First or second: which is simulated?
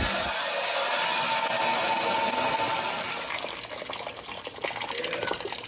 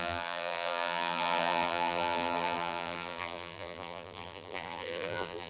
second